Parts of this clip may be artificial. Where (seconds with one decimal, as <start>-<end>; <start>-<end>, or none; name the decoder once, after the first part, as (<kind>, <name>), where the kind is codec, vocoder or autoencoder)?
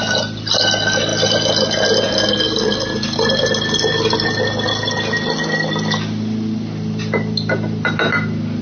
none